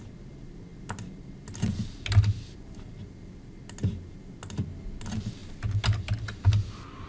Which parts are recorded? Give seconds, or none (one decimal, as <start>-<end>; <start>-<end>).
0.0-7.1